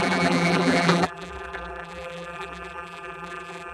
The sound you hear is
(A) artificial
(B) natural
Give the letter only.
A